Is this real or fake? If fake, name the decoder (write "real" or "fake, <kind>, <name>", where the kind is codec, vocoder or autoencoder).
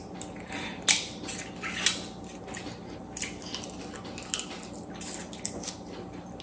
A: real